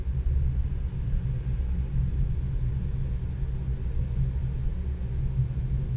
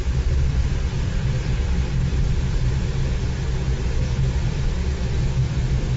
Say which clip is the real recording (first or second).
first